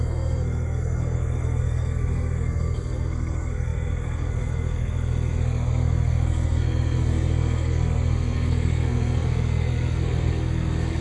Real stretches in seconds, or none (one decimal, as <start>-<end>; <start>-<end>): none